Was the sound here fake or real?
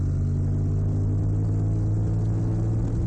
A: real